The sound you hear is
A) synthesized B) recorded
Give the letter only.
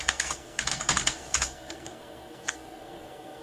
A